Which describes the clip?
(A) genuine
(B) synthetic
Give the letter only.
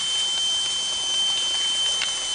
A